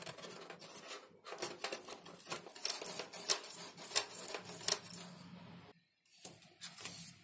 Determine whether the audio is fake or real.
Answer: real